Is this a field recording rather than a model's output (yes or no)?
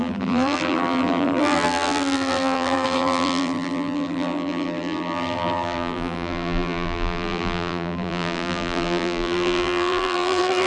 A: no